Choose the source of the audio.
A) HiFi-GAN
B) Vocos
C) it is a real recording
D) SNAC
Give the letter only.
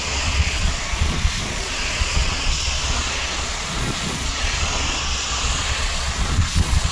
B